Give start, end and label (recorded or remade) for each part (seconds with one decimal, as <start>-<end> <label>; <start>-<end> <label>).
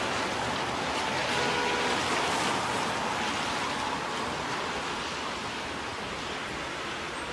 0.0-7.3 recorded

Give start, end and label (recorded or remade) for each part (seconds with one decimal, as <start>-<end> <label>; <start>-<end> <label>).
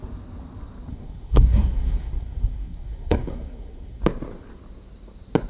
0.0-0.9 recorded; 0.9-4.0 remade; 4.0-5.5 recorded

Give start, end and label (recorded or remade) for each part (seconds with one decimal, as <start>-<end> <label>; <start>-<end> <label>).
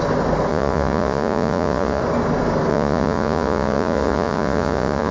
0.0-0.5 recorded; 0.5-2.0 remade; 2.0-2.7 recorded; 2.7-5.1 remade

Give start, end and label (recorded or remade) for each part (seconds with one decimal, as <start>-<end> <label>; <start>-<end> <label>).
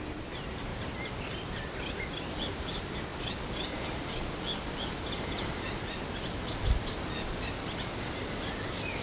0.0-9.0 recorded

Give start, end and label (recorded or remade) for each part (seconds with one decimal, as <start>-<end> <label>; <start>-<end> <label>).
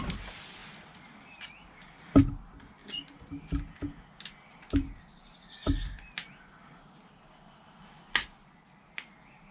0.0-9.5 recorded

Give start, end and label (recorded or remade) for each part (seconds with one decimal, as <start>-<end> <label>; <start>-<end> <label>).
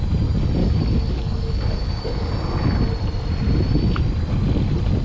0.0-0.6 recorded; 0.6-2.3 remade; 2.3-5.0 recorded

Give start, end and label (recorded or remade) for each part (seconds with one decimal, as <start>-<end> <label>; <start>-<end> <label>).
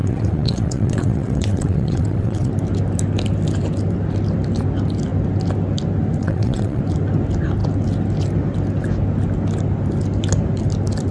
0.0-2.5 remade; 2.5-6.2 recorded; 6.2-6.8 remade; 6.8-11.1 recorded